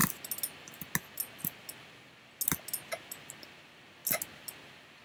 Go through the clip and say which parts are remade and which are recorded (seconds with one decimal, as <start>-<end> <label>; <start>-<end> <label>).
0.0-5.0 recorded